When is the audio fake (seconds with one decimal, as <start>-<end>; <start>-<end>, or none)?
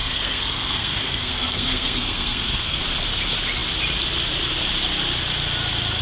0.0-2.8